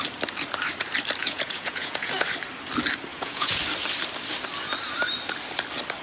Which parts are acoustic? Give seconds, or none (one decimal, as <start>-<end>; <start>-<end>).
0.0-1.2; 2.1-3.1; 3.6-6.0